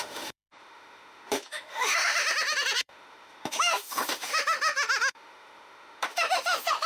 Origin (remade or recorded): remade